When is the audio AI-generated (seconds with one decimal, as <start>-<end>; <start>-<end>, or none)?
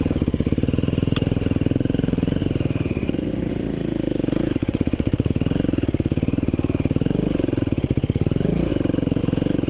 4.6-5.3